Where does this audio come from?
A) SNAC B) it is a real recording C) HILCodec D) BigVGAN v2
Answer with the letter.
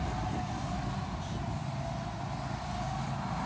B